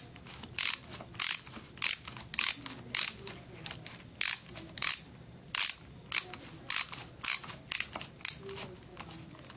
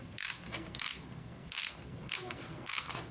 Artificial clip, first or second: second